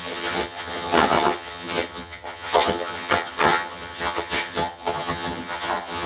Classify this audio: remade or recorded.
remade